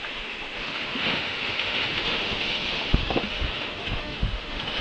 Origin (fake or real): fake